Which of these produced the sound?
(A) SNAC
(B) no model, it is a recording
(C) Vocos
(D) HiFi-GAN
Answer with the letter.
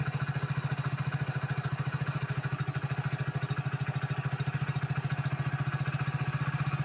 B